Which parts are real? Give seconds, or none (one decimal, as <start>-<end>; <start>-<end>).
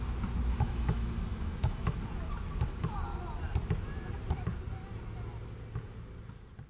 0.0-0.5; 2.0-6.7